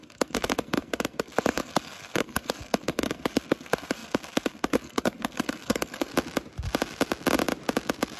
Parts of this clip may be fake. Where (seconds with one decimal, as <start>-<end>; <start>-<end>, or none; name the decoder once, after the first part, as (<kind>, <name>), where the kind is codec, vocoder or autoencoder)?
0.0-6.1 (codec, SNAC)